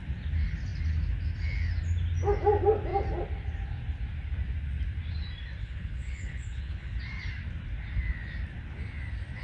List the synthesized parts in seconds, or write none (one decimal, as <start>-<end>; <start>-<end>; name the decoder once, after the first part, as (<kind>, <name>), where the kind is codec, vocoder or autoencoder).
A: 5.6-7.0 (codec, HILCodec)